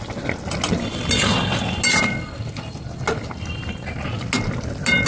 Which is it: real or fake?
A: real